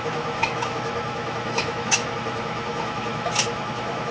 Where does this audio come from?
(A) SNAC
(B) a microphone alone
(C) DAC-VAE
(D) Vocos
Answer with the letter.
C